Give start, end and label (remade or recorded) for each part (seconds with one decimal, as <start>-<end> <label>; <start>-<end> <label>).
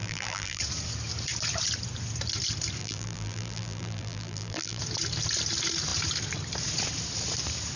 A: 0.0-0.6 remade; 0.6-2.8 recorded; 2.8-4.8 remade; 4.8-7.8 recorded